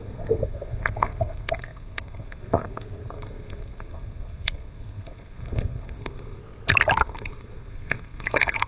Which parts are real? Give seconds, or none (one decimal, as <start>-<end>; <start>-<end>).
6.4-7.0